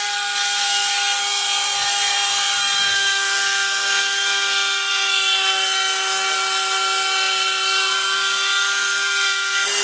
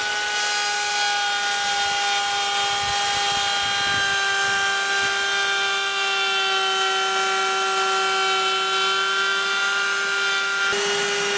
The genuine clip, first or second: second